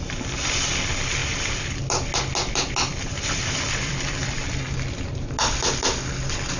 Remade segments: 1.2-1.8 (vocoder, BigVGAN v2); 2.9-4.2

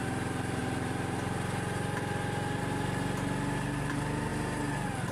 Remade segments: none

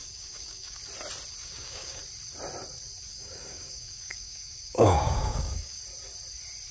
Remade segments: 0.0-0.8 (codec, DAC); 1.4-2.0; 3.1-5.8

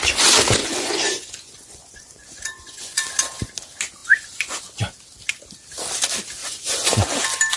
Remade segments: 0.6-3.1 (vocoder, Vocos); 4.0-4.6; 6.4-6.9